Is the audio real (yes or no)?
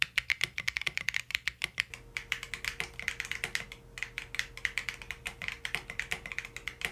yes